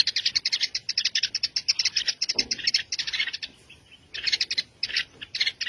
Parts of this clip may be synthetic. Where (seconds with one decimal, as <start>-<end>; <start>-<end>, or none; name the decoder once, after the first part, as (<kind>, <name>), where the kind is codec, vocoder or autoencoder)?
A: none